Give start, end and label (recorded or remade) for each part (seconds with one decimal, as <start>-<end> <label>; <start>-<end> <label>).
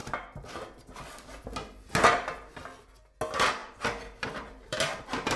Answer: 0.0-3.6 recorded; 3.6-5.0 remade; 5.0-5.4 recorded